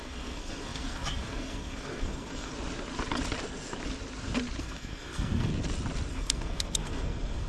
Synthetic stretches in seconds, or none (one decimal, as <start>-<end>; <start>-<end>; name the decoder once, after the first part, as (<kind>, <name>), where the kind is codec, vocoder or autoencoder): 0.0-2.5 (codec, SNAC); 4.6-5.5; 6.1-7.5